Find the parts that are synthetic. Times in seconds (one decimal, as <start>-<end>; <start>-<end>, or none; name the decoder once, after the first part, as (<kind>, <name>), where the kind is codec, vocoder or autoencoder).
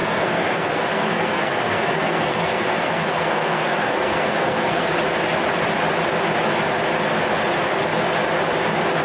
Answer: 0.0-4.9 (codec, SNAC)